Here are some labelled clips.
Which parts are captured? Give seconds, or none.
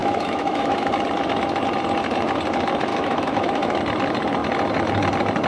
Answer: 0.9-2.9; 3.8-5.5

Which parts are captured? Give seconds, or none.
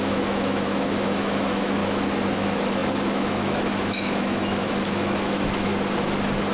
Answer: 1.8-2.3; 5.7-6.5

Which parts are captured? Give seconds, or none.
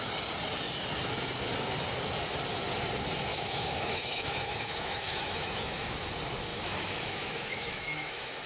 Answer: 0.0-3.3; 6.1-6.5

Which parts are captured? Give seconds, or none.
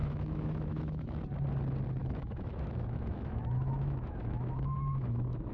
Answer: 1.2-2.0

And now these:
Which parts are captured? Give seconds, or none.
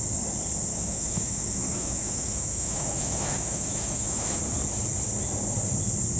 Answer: 0.0-0.7; 4.4-6.2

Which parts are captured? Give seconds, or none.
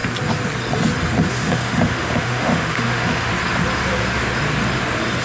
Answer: 0.0-1.3; 3.3-5.2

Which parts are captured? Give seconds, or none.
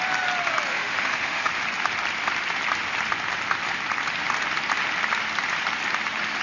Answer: 0.0-0.7; 1.5-6.4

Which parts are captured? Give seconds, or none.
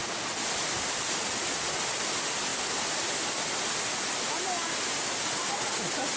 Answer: 0.0-6.2